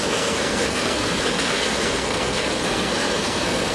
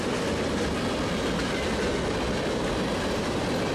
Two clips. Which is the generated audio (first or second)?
first